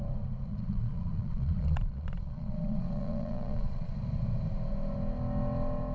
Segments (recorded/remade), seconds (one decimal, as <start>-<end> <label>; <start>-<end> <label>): 0.0-0.5 recorded; 0.5-3.9 remade; 3.9-5.9 recorded